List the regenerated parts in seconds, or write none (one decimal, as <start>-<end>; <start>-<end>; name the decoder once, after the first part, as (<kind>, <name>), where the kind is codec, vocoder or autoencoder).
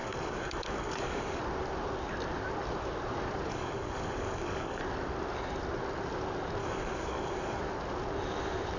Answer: 0.0-1.4 (codec, DAC); 3.5-4.8; 6.6-7.6